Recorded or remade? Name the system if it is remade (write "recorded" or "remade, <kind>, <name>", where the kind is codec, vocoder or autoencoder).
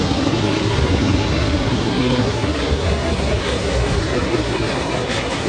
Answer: remade, codec, SNAC